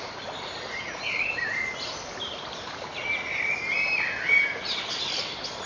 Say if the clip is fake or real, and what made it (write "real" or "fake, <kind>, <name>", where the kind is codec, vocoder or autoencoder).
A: real